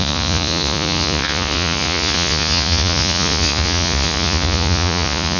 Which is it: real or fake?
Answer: fake